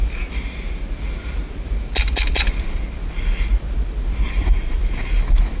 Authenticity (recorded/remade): recorded